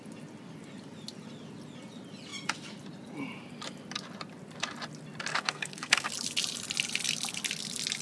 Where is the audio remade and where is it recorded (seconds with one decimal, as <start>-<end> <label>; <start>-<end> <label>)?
0.0-5.3 recorded; 5.3-6.1 remade; 6.1-8.0 recorded